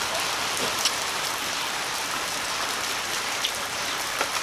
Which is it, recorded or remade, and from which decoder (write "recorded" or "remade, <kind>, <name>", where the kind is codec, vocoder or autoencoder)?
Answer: remade, vocoder, BigVGAN v2